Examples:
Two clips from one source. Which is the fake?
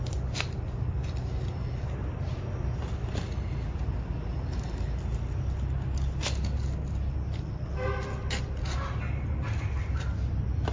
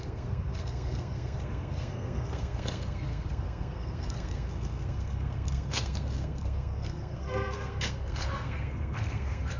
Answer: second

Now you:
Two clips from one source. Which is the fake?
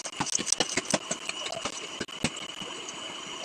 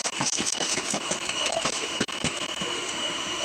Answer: second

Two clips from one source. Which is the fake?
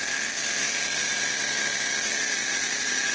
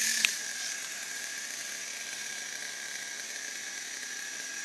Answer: second